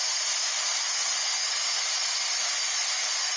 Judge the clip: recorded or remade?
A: recorded